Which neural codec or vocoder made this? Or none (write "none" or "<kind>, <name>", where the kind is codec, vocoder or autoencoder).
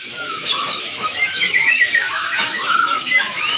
autoencoder, DAC-VAE